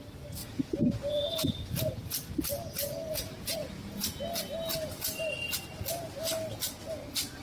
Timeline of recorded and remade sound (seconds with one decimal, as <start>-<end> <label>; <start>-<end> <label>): 0.0-0.4 recorded; 0.4-2.3 remade; 2.3-2.8 recorded; 2.8-4.2 remade; 4.2-7.4 recorded